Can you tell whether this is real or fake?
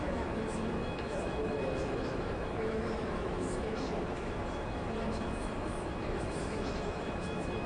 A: fake